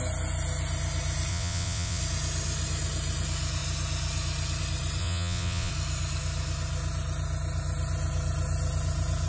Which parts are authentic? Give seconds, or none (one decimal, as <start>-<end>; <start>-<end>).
0.0-1.3; 2.0-5.0; 5.7-9.3